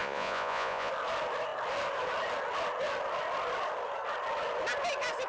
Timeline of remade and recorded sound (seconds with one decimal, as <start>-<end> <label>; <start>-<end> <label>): 0.0-0.9 remade; 0.9-5.3 recorded